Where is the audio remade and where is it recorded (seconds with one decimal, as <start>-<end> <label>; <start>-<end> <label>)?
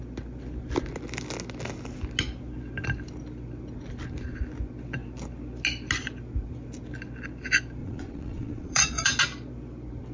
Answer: 0.0-7.8 recorded; 7.8-9.2 remade; 9.2-10.1 recorded